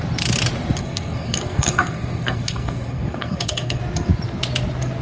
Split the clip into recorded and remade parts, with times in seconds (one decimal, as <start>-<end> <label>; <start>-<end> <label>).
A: 0.0-0.8 recorded; 0.8-3.8 remade; 3.8-5.0 recorded